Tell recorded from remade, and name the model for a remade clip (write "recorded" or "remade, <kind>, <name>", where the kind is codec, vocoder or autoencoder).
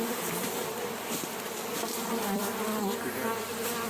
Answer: remade, vocoder, BigVGAN v2